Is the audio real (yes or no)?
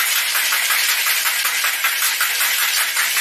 yes